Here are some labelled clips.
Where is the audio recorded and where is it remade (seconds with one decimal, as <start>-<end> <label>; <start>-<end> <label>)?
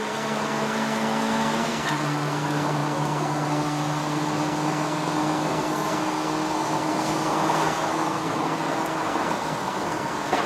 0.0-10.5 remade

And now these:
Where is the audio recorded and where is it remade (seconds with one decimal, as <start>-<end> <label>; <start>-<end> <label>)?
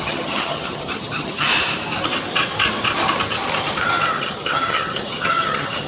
0.0-1.5 remade; 1.5-4.2 recorded; 4.2-5.9 remade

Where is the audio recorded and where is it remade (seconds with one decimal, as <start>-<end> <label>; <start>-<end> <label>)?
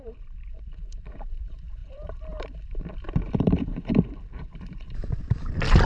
0.0-5.9 remade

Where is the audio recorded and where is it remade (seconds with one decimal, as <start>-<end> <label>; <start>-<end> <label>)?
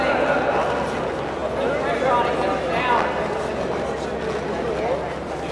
0.0-5.5 recorded